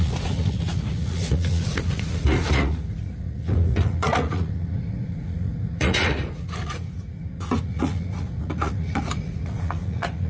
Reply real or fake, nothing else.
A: fake